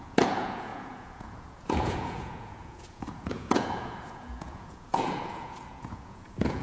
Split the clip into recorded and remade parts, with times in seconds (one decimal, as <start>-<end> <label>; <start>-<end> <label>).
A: 0.0-6.6 remade